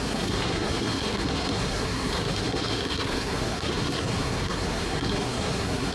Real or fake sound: fake